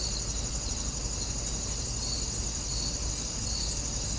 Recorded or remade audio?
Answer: recorded